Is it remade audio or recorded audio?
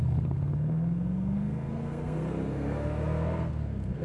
remade